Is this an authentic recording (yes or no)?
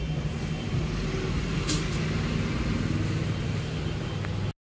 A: yes